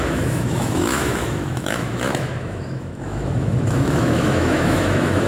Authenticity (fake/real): fake